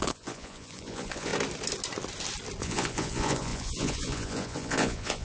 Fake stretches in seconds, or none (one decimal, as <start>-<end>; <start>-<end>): 0.0-1.3; 2.6-5.2